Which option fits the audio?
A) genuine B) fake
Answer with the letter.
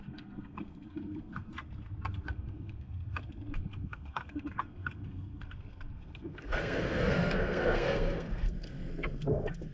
B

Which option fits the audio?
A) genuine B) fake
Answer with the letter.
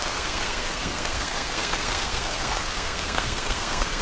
B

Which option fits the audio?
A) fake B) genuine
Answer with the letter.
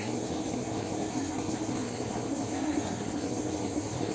A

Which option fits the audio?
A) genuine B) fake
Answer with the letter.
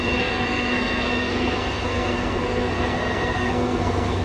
B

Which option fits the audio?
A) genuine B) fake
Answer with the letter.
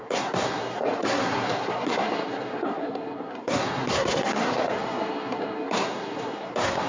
B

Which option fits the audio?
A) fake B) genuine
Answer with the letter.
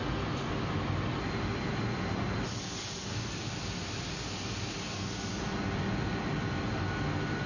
B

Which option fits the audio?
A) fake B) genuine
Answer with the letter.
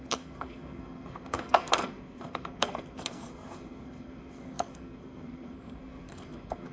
A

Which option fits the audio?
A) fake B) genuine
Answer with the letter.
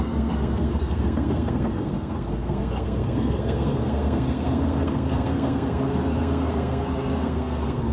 A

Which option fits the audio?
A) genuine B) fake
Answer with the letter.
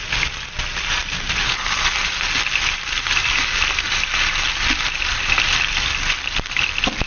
A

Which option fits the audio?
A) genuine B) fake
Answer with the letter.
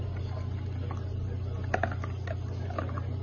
A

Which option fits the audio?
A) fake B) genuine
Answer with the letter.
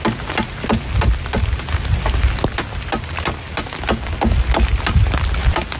B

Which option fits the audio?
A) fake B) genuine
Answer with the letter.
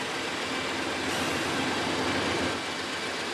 B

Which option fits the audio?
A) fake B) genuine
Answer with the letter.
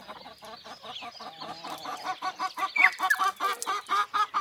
B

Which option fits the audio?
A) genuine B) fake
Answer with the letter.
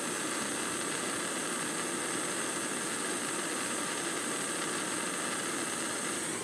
A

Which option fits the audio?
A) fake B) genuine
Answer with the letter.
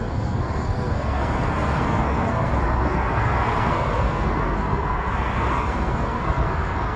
A